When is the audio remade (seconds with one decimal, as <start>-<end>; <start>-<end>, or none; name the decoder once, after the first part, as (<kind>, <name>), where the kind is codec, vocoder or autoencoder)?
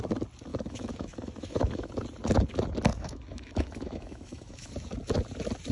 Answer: 0.5-1.9 (autoencoder, DAC-VAE); 2.9-4.7